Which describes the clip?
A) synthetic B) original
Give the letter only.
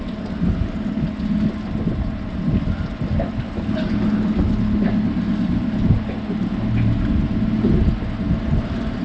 B